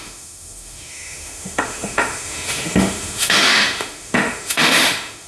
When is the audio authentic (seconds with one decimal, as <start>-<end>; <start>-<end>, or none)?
none